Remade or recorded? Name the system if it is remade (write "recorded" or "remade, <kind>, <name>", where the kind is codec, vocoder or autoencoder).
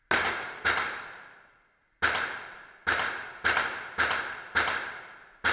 recorded